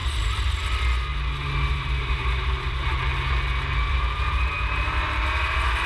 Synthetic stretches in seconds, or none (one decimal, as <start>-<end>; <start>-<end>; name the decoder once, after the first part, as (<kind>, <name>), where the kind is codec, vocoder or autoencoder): 1.7-3.1 (vocoder, BigVGAN v2); 3.9-5.9